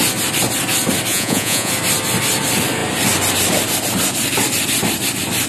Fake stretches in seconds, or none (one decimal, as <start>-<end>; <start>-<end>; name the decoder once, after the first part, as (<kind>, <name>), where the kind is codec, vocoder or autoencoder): 1.1-1.7 (vocoder, Vocos)